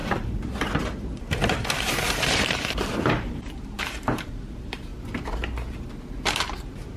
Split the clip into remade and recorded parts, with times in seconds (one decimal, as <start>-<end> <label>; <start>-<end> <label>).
0.0-4.9 remade; 4.9-6.4 recorded; 6.4-7.0 remade